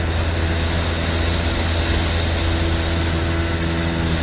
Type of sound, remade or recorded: recorded